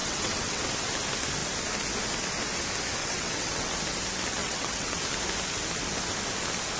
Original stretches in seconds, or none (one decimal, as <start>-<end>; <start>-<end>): 0.6-3.0; 3.7-4.4; 5.0-6.8